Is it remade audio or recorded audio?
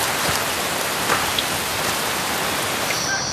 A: recorded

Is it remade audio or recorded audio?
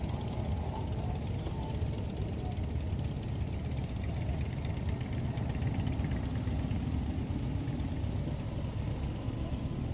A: recorded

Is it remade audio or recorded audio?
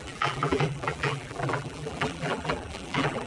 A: remade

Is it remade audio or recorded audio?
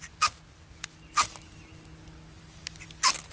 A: recorded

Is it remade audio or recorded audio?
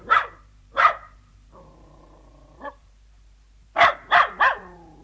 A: remade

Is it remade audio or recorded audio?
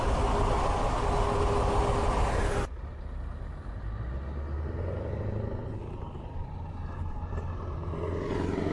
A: recorded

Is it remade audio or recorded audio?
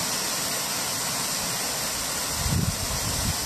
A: recorded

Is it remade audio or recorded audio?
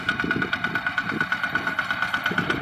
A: recorded